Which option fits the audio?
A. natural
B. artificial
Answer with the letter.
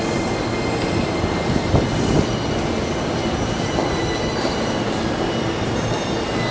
A